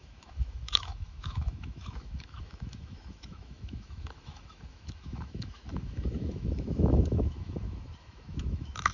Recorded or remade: remade